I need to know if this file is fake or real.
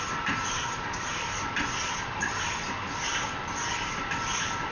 real